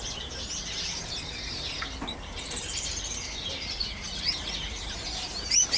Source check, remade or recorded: remade